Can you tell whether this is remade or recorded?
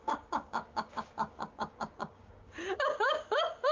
remade